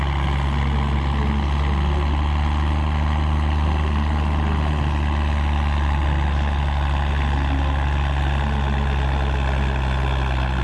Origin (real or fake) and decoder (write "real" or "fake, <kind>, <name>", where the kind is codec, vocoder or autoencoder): real